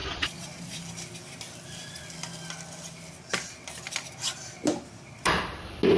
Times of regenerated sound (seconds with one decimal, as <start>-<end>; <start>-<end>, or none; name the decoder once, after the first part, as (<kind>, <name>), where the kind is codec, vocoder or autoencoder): 0.0-0.8 (vocoder, Vocos)